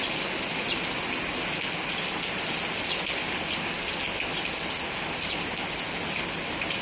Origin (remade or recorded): recorded